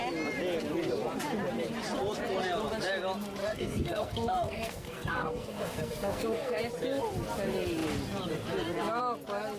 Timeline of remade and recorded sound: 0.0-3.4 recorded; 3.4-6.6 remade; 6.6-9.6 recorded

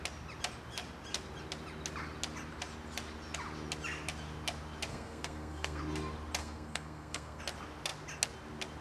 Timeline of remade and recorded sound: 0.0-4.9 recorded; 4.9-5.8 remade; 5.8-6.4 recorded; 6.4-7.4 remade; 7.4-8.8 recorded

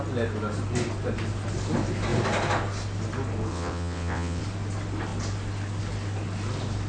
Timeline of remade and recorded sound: 0.0-3.5 recorded; 3.5-4.4 remade; 4.4-6.9 recorded

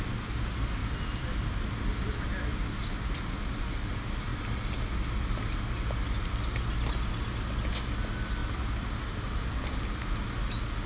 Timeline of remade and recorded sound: 0.0-0.8 recorded; 0.8-3.2 remade; 3.2-8.4 recorded; 8.4-9.8 remade; 9.8-10.9 recorded